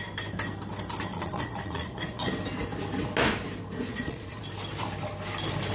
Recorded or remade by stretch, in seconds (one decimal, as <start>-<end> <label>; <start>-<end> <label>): 0.0-1.1 recorded; 1.1-2.3 remade; 2.3-3.9 recorded; 3.9-4.4 remade; 4.4-5.7 recorded